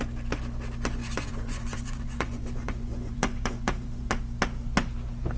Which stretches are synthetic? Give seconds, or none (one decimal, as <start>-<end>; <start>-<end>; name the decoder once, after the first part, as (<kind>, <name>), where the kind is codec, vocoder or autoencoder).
1.0-4.2 (vocoder, Vocos)